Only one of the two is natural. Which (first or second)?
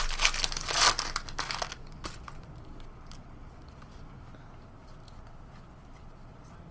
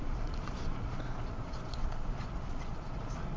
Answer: first